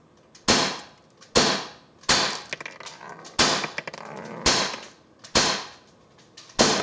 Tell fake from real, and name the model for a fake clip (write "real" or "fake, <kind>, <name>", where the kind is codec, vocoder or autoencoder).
real